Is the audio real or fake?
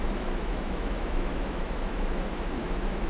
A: fake